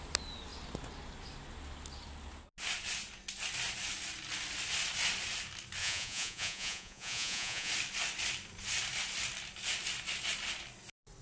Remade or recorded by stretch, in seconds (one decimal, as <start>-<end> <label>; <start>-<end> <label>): 0.0-5.8 recorded; 5.8-7.7 remade; 7.7-11.2 recorded

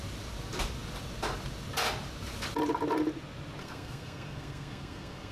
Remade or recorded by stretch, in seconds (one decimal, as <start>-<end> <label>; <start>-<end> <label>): 0.0-3.6 recorded; 3.6-5.3 remade

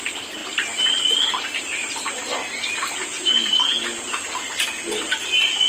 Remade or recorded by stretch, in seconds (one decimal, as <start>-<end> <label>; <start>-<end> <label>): 0.0-5.7 recorded

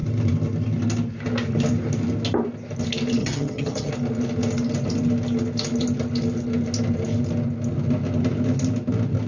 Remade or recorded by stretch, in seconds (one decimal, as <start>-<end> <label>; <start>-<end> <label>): 0.0-3.2 recorded; 3.2-3.9 remade; 3.9-9.3 recorded

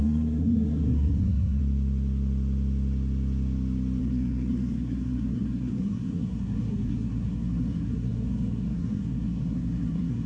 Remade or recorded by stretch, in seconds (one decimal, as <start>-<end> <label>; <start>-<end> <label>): 0.0-1.6 remade; 1.6-4.0 recorded; 4.0-10.3 remade

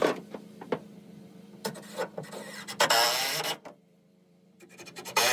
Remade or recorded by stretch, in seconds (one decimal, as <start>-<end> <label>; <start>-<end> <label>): 0.0-3.2 recorded; 3.2-5.3 remade

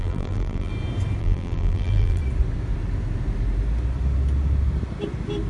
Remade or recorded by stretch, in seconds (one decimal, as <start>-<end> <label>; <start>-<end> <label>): 0.0-0.7 remade; 0.7-1.2 recorded; 1.2-2.2 remade; 2.2-5.5 recorded